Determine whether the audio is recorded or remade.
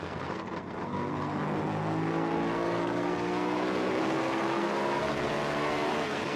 remade